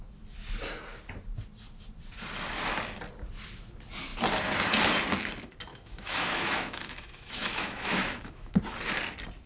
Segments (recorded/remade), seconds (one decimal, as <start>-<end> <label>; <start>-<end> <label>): 0.0-5.7 recorded; 5.7-8.6 remade; 8.6-9.5 recorded

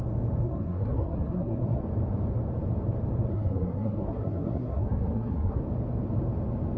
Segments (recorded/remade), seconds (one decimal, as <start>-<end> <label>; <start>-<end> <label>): 0.0-0.4 recorded; 0.4-1.8 remade; 1.8-3.3 recorded; 3.3-5.6 remade; 5.6-6.8 recorded

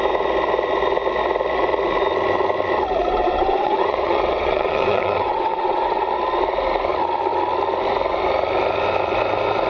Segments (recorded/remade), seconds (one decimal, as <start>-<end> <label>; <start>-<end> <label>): 0.0-3.1 recorded; 3.1-6.0 remade; 6.0-9.7 recorded

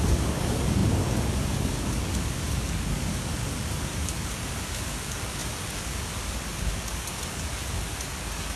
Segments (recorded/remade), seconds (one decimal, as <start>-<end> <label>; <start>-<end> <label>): 0.0-8.6 remade

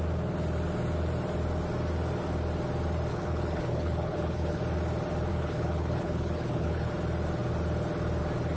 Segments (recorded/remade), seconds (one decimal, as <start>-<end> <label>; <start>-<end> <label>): 0.0-3.1 recorded; 3.1-4.6 remade; 4.6-5.3 recorded; 5.3-6.9 remade; 6.9-8.6 recorded

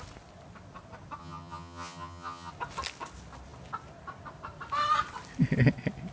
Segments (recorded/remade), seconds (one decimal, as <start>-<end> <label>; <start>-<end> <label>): 0.0-1.2 recorded; 1.2-2.5 remade; 2.5-6.1 recorded

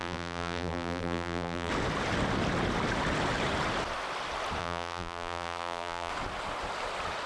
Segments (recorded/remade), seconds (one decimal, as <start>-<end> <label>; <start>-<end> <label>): 0.0-1.7 remade; 1.7-4.6 recorded; 4.6-6.1 remade; 6.1-7.3 recorded

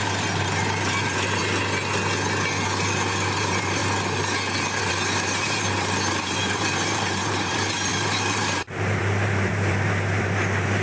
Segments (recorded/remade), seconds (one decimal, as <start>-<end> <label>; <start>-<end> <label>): 0.0-1.4 remade; 1.4-3.4 recorded; 3.4-3.8 remade; 3.8-4.8 recorded; 4.8-10.8 remade